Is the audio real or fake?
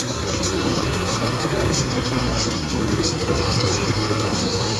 fake